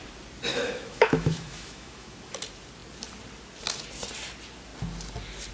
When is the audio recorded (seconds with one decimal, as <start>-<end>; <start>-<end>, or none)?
0.0-0.5; 2.2-5.5